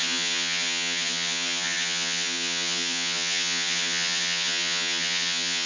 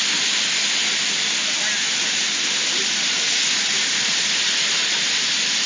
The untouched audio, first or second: second